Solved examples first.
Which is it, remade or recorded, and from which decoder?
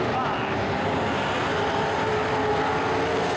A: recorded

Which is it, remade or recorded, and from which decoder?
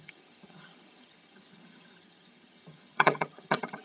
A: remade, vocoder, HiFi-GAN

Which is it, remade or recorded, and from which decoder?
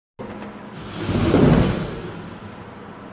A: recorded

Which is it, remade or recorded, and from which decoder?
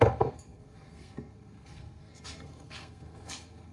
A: remade, codec, SNAC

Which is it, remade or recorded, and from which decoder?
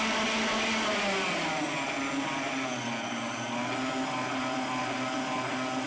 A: recorded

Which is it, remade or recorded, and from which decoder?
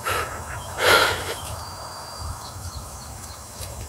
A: remade, autoencoder, DAC-VAE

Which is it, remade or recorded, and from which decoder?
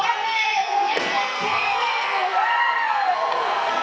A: remade, codec, SNAC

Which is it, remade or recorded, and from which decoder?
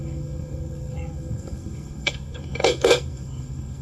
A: remade, codec, SNAC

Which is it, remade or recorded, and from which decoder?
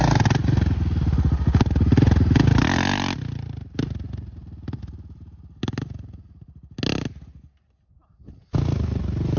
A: recorded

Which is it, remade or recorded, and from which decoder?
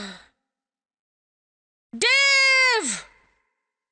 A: recorded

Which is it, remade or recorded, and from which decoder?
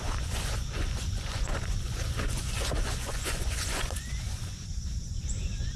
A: remade, vocoder, Vocos